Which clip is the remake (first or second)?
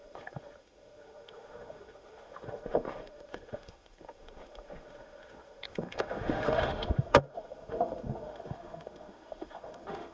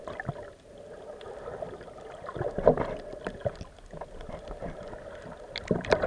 first